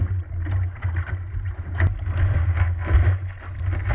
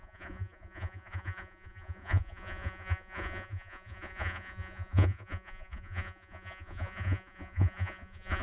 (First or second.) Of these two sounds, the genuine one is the first